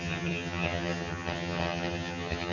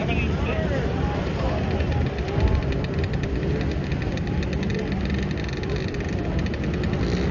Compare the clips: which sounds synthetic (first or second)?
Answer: first